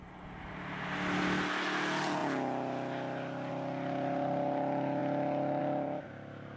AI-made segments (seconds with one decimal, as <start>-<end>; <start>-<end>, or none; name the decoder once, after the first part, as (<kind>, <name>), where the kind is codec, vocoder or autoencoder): none